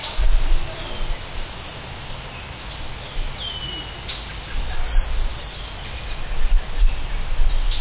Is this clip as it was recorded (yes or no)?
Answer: yes